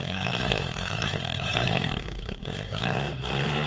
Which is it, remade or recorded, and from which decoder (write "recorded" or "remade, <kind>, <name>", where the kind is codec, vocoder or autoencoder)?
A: remade, codec, SNAC